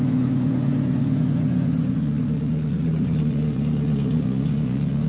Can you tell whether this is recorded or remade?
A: remade